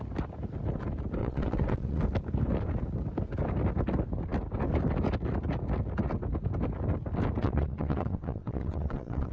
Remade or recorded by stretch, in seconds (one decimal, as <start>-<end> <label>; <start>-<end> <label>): 0.0-1.2 recorded; 1.2-2.0 remade; 2.0-7.4 recorded; 7.4-9.3 remade